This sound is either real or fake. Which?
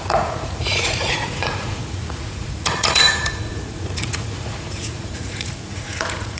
fake